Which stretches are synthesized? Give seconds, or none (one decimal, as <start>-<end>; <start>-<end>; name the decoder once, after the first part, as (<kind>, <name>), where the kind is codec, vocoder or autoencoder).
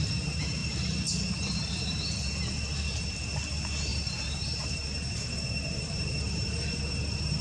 0.0-0.6 (vocoder, BigVGAN v2); 1.2-7.4